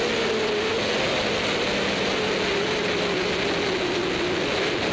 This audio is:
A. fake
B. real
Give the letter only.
B